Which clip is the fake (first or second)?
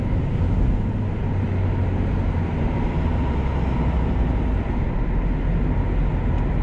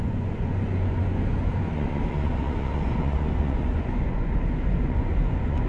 second